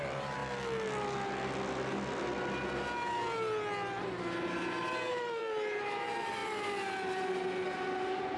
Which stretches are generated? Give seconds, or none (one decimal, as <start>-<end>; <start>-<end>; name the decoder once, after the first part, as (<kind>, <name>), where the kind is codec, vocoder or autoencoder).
0.0-0.4 (vocoder, BigVGAN v2); 5.1-6.4